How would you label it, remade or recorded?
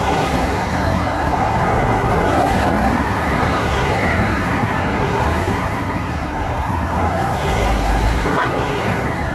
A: remade